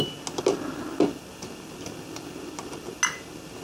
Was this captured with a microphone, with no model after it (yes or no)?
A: yes